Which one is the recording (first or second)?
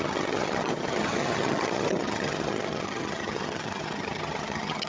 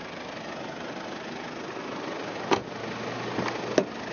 second